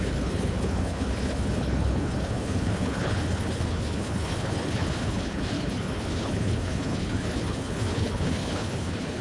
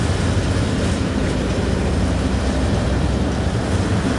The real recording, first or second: second